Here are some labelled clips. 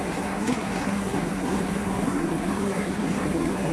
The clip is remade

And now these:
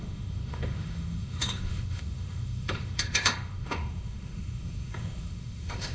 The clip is remade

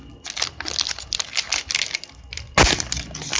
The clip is recorded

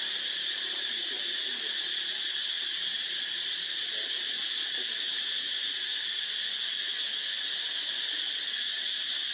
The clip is recorded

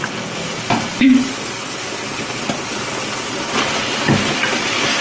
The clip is recorded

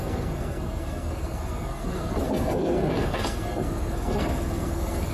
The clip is remade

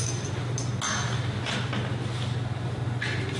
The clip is recorded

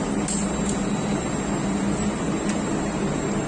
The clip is recorded